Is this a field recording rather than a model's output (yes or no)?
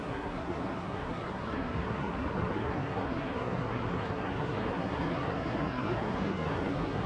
no